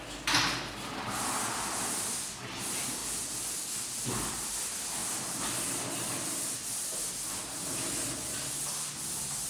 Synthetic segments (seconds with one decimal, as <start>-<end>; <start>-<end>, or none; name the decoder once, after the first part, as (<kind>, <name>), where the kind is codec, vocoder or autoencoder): none